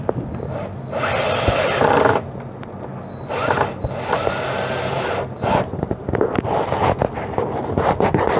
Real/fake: real